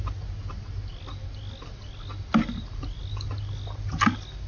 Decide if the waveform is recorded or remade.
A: recorded